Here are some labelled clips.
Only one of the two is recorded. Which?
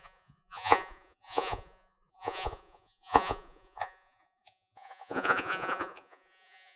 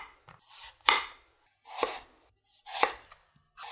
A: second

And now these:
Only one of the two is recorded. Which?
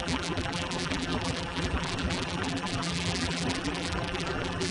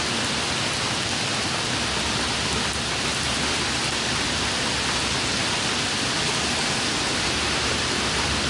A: second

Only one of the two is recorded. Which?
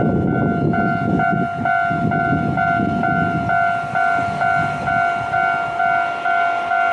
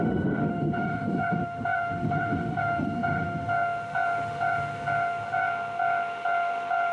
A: first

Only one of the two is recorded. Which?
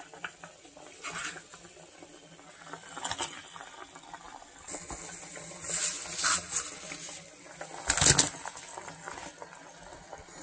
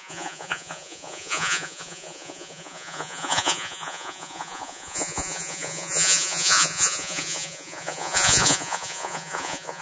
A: first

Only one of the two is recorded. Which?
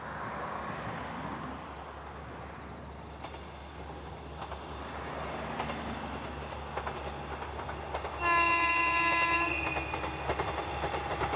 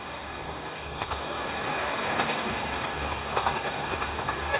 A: first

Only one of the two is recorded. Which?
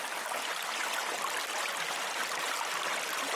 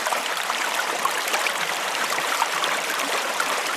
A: first